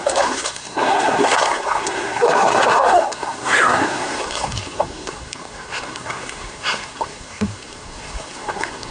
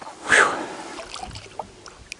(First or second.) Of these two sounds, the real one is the second